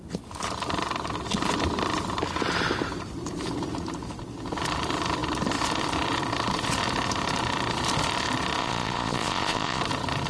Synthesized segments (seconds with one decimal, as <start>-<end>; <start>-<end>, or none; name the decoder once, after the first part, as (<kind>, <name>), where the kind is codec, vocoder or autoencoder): 8.6-9.8 (vocoder, Vocos)